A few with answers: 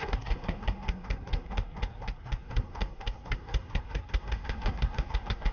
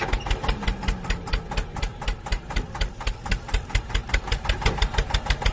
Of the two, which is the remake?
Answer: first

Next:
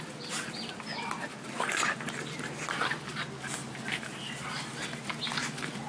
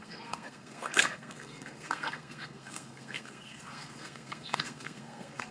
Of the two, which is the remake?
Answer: second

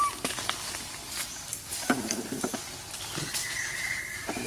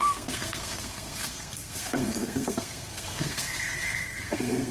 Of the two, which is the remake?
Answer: second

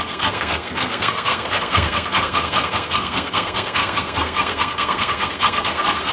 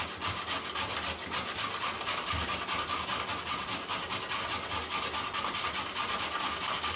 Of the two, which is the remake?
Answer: first